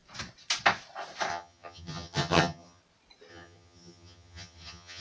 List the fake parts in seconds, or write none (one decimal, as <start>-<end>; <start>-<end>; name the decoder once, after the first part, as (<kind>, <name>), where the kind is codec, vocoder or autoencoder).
1.3-2.8 (vocoder, HiFi-GAN); 3.3-5.0